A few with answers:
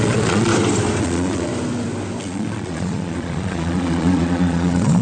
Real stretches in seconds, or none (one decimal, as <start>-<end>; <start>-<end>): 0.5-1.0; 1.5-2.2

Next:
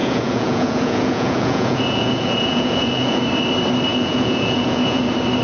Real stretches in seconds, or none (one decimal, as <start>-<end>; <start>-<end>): 3.2-3.9; 5.0-5.4

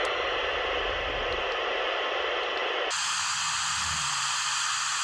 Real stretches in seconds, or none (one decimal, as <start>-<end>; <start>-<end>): 0.0-5.0

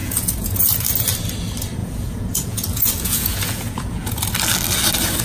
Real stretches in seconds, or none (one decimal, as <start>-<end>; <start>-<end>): 0.6-1.8; 4.2-5.2

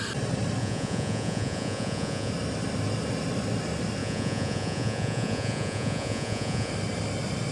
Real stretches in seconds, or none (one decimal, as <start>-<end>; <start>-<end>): 0.0-0.6; 2.3-4.0; 6.7-7.5

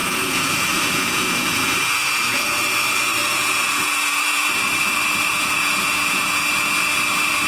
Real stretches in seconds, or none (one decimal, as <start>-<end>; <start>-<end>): 2.6-3.2; 4.5-5.3; 6.5-7.5

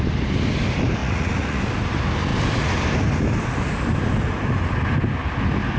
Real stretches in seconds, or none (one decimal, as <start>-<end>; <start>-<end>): 0.0-1.0; 1.6-5.8